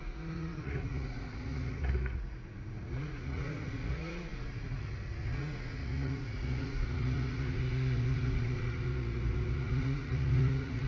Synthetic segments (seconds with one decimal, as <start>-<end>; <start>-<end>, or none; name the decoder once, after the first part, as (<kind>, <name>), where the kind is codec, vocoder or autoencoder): 0.0-10.9 (vocoder, Vocos)